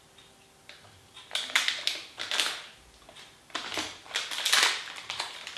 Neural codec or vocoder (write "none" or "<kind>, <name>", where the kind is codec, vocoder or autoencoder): none